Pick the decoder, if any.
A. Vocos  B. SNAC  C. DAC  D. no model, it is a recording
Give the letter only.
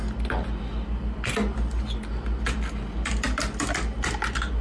D